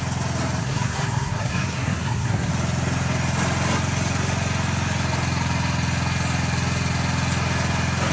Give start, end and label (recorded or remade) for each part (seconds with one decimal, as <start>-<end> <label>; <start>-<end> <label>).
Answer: 0.0-0.6 recorded; 0.6-2.5 remade; 2.5-8.1 recorded